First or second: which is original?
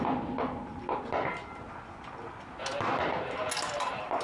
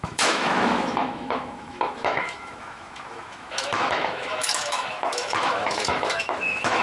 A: first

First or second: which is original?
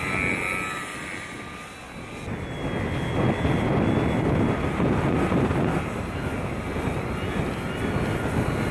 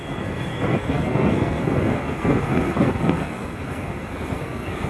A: first